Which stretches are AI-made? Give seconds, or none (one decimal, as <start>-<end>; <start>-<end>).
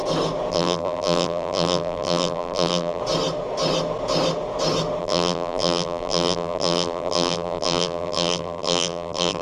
0.5-3.0; 5.0-9.4